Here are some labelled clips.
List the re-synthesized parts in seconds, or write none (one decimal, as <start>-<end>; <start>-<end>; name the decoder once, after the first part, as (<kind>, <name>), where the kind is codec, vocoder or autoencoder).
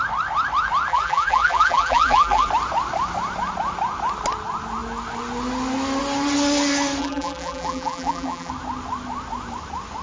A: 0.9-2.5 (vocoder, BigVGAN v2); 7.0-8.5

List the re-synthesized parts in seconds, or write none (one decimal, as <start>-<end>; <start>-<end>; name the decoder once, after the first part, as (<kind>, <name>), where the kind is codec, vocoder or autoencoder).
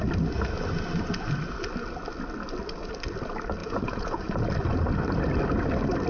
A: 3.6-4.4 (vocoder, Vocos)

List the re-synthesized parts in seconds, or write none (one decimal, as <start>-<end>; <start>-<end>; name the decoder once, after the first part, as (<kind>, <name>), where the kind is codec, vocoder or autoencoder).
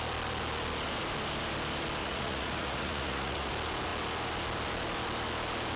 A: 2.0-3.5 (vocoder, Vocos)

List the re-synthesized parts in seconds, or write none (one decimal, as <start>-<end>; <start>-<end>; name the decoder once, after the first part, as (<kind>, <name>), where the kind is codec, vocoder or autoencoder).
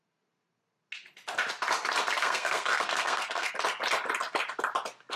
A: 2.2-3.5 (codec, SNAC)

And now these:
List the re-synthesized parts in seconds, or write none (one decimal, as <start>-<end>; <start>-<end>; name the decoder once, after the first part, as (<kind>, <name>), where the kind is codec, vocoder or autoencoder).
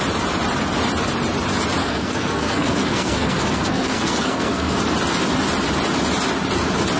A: 1.8-4.8 (codec, SNAC)